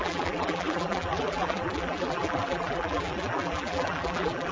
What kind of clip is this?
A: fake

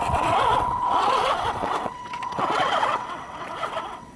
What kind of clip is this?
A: fake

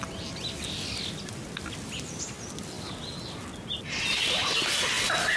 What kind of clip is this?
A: real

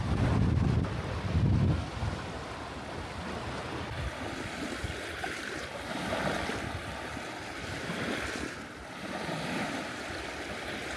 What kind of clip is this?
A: fake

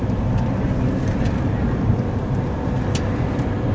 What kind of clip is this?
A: real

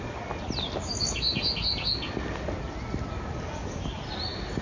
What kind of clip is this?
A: real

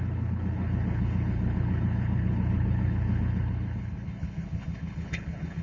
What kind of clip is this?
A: fake